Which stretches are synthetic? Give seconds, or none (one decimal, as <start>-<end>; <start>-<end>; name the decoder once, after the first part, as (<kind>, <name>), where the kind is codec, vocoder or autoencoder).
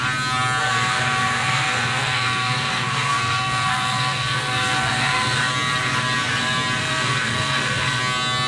0.6-5.4 (codec, SNAC); 6.8-8.0